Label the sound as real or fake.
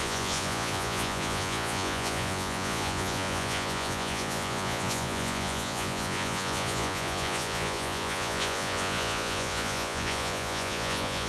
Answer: fake